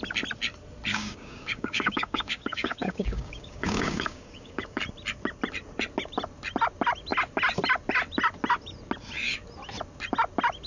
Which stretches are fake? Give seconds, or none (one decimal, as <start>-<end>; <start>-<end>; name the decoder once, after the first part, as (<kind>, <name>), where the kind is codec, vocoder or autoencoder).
0.9-4.8 (codec, DAC)

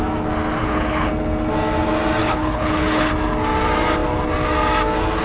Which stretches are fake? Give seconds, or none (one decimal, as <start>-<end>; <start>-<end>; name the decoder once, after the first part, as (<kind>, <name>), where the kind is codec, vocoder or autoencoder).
0.6-1.1 (codec, HILCodec); 2.2-3.1

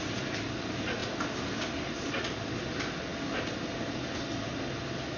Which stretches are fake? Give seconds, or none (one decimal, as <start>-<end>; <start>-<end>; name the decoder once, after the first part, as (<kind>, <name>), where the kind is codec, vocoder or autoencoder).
none

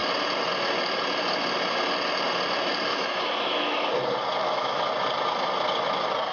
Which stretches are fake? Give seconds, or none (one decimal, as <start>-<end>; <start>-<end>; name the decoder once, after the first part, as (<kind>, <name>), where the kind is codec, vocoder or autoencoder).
2.9-3.9 (autoencoder, DAC-VAE); 4.4-4.9

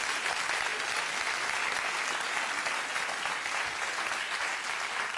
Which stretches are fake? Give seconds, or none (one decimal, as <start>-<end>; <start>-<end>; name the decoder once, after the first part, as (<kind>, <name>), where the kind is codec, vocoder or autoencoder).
none

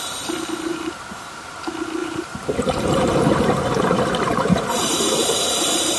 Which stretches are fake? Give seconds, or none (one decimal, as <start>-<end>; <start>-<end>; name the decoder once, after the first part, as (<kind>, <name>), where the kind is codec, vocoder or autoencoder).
0.7-1.3 (vocoder, BigVGAN v2); 2.0-5.6

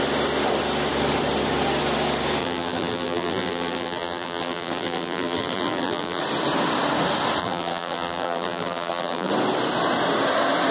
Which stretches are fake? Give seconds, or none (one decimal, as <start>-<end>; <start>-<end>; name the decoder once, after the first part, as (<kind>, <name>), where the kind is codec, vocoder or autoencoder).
2.4-6.2 (vocoder, BigVGAN v2); 7.4-9.3

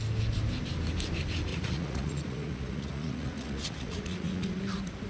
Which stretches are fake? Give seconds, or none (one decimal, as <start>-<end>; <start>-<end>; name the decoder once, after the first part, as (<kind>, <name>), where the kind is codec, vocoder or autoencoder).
1.5-4.6 (vocoder, Vocos)